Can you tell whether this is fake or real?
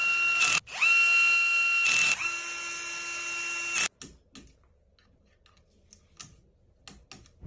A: real